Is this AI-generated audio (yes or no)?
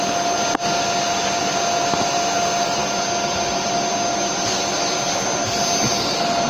no